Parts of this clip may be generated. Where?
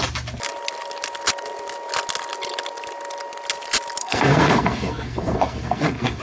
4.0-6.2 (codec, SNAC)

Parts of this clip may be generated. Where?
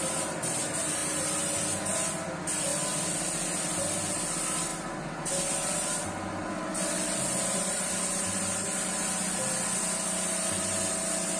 none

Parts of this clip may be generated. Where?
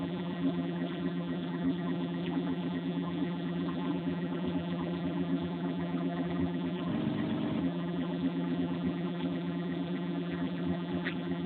0.0-6.9 (vocoder, BigVGAN v2); 7.6-11.5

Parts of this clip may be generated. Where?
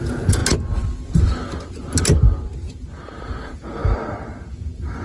0.0-0.4 (vocoder, Vocos); 3.4-3.8; 4.5-5.0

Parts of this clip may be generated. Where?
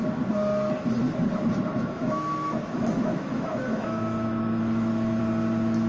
1.7-5.2 (autoencoder, DAC-VAE)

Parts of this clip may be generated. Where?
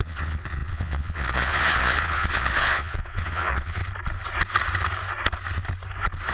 0.0-3.8 (vocoder, Vocos)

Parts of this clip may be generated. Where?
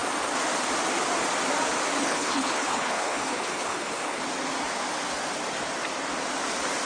2.0-4.2 (codec, HILCodec)